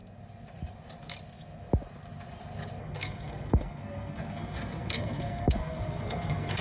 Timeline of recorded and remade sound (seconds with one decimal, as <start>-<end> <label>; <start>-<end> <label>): 0.0-2.8 recorded; 2.8-6.6 remade